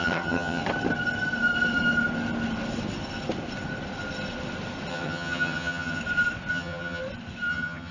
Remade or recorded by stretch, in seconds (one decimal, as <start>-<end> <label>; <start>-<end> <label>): 0.0-0.6 remade; 0.6-4.9 recorded; 4.9-6.0 remade; 6.0-6.5 recorded; 6.5-7.0 remade; 7.0-7.5 recorded; 7.5-7.9 remade